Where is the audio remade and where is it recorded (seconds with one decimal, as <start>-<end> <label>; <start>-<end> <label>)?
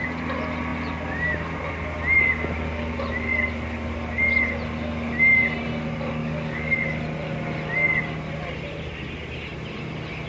0.0-6.2 recorded; 6.2-6.7 remade; 6.7-10.3 recorded